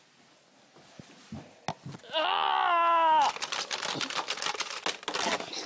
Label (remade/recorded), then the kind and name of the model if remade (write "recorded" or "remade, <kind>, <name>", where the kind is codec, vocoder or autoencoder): recorded